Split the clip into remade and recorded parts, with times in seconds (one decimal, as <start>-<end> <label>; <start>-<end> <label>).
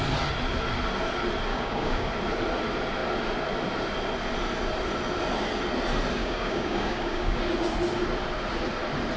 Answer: 0.0-1.5 recorded; 1.5-2.1 remade; 2.1-6.2 recorded; 6.2-7.4 remade; 7.4-9.2 recorded